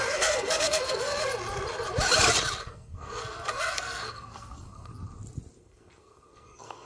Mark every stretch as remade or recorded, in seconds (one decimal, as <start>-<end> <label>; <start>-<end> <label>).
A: 0.0-1.1 remade; 1.1-2.6 recorded; 2.6-4.9 remade; 4.9-5.6 recorded; 5.6-6.9 remade